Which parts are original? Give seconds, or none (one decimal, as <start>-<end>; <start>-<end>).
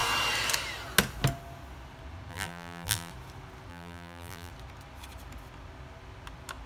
0.0-2.3; 3.1-3.7; 4.5-6.7